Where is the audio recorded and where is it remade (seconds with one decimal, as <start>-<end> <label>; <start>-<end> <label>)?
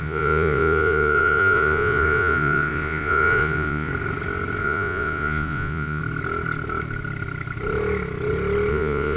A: 0.0-3.9 remade; 3.9-4.6 recorded; 4.6-6.0 remade; 6.0-8.7 recorded; 8.7-9.2 remade